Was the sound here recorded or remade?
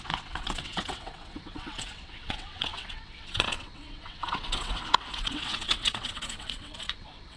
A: remade